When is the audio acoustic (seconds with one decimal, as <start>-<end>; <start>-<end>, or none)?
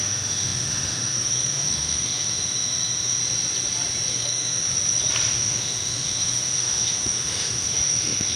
3.2-4.1; 4.7-5.3